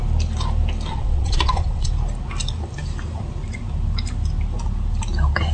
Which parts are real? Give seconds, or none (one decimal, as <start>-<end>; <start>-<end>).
0.0-0.9; 1.9-5.5